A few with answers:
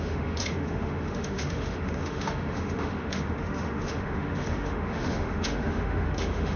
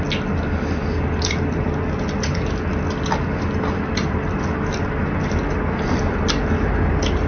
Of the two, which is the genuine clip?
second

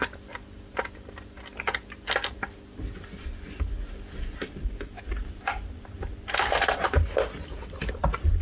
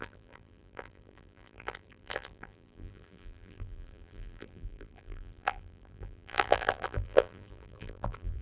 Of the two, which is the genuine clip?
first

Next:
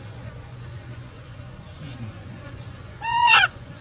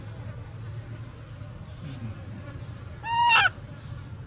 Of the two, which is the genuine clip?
second